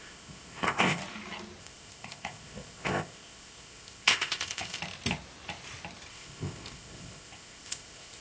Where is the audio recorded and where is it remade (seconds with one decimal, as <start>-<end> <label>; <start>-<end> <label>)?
0.0-1.0 remade; 1.0-1.6 recorded; 1.6-4.8 remade; 4.8-6.1 recorded; 6.1-8.2 remade